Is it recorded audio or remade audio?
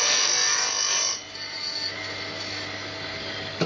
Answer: recorded